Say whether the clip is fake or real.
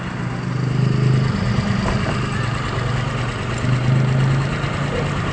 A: real